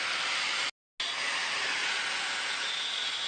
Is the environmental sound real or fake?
real